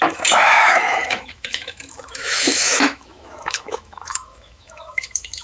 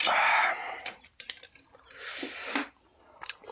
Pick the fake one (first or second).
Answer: first